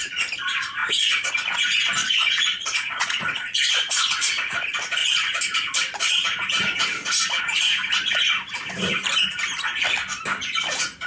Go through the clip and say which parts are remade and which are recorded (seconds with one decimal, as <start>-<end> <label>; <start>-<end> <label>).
0.0-2.0 recorded; 2.0-3.9 remade; 3.9-11.1 recorded